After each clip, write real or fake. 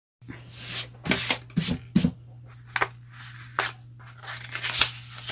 real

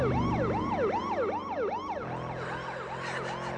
real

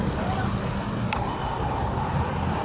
real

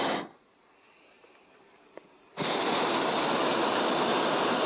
real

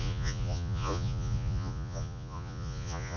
fake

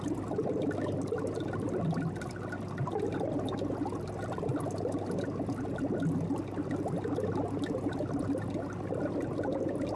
real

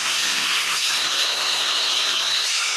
fake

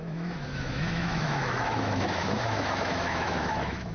fake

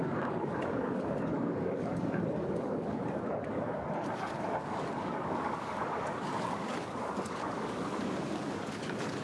fake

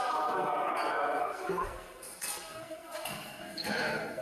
fake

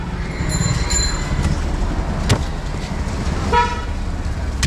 real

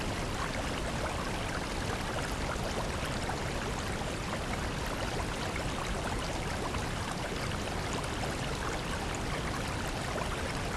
real